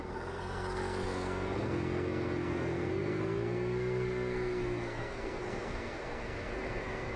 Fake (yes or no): yes